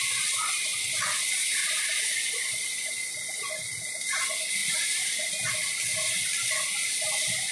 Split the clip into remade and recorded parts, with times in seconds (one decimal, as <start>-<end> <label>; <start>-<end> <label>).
0.0-1.6 recorded; 1.6-2.9 remade; 2.9-7.5 recorded